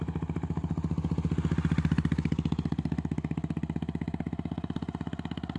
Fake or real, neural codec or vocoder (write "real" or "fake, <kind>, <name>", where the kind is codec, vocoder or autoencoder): real